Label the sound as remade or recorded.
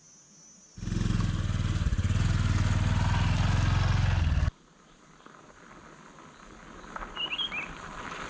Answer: recorded